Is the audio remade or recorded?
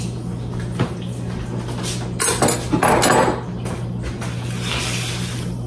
recorded